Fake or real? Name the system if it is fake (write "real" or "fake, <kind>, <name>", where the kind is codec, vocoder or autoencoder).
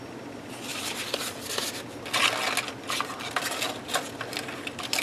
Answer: real